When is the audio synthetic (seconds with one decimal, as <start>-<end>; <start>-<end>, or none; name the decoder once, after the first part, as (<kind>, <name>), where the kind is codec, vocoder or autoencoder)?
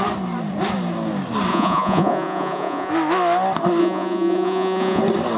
1.5-2.9 (vocoder, Vocos); 3.8-5.0